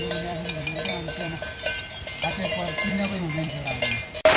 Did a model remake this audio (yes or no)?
yes